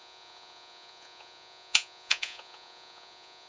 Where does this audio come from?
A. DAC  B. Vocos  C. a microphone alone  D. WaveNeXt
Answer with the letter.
B